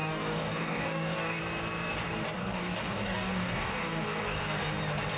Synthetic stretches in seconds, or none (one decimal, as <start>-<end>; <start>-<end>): 0.0-1.4; 2.4-4.8